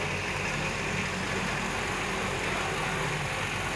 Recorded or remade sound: recorded